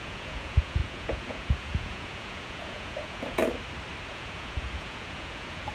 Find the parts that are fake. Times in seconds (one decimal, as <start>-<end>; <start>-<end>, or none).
0.0-3.4; 4.1-5.7